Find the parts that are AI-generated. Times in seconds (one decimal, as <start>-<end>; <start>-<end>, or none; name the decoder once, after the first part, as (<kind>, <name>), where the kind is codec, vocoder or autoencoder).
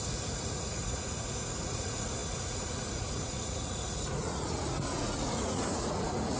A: 0.0-6.4 (vocoder, Vocos)